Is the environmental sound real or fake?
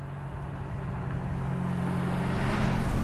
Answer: real